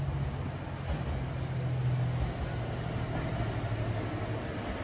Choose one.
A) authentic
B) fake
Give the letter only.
A